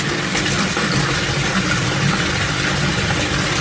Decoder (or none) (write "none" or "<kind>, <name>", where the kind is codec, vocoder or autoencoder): vocoder, BigVGAN v2